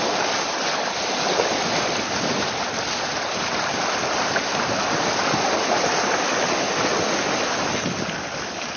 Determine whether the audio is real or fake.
real